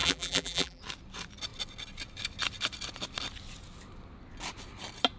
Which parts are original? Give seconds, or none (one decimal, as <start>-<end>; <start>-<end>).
0.8-5.2